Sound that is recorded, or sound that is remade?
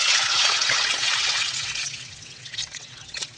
remade